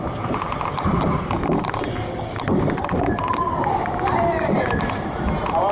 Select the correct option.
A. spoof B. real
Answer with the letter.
A